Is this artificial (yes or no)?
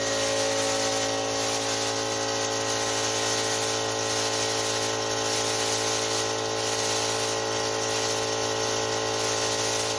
no